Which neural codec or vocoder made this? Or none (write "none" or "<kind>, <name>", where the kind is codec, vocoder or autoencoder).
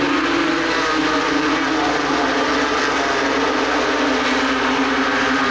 none